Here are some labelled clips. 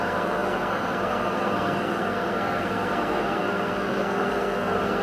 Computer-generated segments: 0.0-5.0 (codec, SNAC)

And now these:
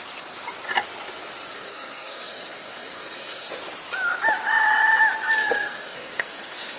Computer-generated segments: 1.5-3.5 (codec, SNAC); 5.4-6.8

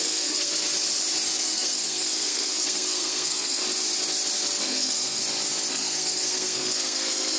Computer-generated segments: 0.0-0.5 (codec, SNAC); 1.4-3.6; 4.6-5.2; 5.7-7.4

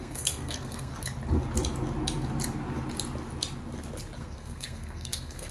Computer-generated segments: 0.0-0.9 (codec, SNAC); 4.2-5.5

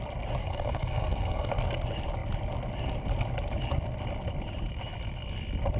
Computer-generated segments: 0.4-1.5 (codec, SNAC)